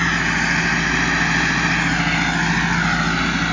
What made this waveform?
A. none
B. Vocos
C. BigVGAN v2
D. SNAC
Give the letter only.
A